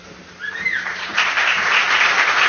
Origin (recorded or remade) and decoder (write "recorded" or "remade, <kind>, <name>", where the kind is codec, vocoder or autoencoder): remade, vocoder, BigVGAN v2